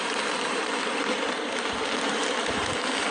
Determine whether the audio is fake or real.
real